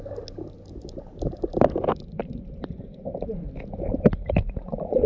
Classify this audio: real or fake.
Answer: real